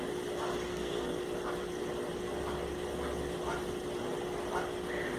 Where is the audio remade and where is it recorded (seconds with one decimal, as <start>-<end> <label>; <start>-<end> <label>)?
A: 0.0-0.7 recorded; 0.7-1.2 remade; 1.2-5.2 recorded